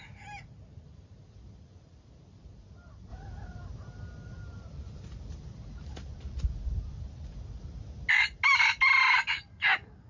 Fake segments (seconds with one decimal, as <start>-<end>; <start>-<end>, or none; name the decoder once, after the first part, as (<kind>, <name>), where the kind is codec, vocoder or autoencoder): none